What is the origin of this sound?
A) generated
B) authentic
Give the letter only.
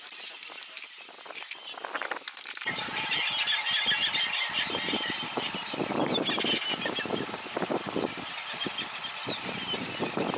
B